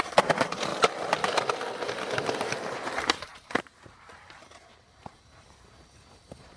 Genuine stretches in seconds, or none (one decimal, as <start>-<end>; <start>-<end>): 0.7-2.1